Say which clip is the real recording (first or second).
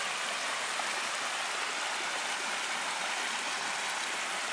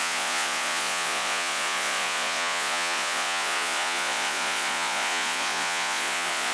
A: first